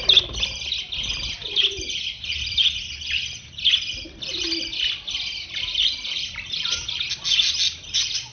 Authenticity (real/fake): real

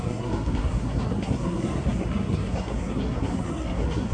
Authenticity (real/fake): fake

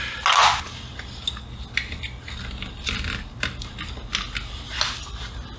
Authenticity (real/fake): real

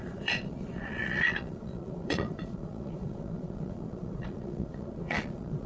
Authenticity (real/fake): fake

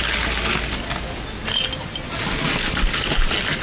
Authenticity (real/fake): real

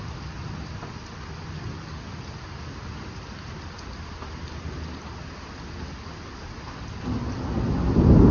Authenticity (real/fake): real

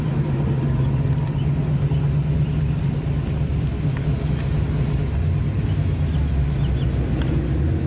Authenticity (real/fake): real